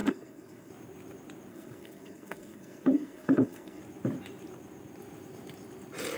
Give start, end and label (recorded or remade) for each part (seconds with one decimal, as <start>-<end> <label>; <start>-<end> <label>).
0.0-0.7 remade; 0.7-1.5 recorded; 1.5-3.8 remade; 3.8-6.2 recorded